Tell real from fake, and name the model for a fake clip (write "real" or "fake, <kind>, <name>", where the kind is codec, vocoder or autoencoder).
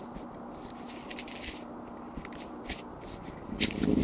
real